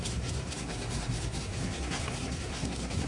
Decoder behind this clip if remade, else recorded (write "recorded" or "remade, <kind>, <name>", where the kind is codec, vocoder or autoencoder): remade, codec, SNAC